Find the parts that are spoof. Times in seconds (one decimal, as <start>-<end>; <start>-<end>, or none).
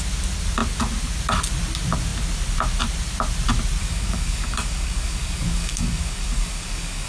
3.8-7.1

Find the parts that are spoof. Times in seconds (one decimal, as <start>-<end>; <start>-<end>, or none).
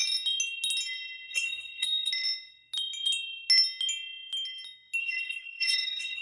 1.3-2.1; 5.0-6.2